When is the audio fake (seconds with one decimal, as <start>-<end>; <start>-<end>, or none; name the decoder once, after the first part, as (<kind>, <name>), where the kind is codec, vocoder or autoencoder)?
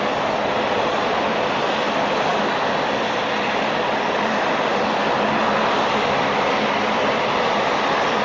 none